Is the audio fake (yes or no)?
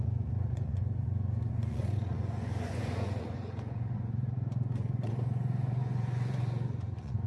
yes